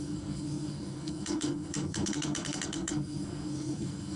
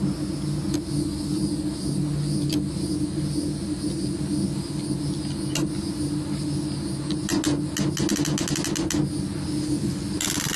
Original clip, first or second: second